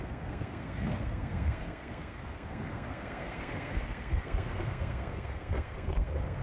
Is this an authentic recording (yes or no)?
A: no